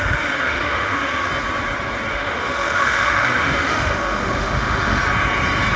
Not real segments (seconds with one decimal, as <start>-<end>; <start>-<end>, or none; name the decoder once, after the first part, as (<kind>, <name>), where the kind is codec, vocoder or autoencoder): 0.0-1.3 (autoencoder, DAC-VAE); 2.1-5.0